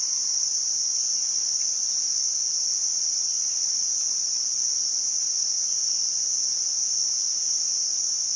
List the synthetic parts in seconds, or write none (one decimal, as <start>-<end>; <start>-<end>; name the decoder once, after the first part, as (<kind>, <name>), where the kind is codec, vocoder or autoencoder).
2.9-3.7 (vocoder, Vocos)